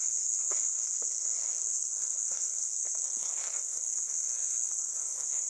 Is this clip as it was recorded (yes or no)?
no